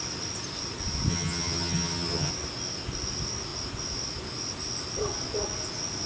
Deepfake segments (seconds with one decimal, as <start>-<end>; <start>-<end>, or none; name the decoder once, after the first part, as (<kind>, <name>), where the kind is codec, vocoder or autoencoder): 1.1-2.3 (vocoder, HiFi-GAN)